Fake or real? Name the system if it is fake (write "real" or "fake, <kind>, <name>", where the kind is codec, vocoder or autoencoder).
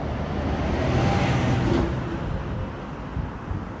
real